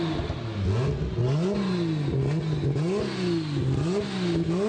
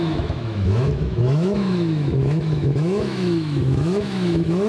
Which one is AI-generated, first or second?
second